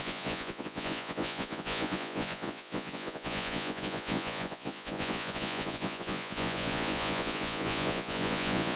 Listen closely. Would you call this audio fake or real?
fake